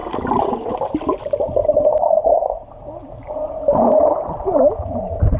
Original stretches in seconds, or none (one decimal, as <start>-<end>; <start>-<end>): 0.7-1.6; 2.2-3.0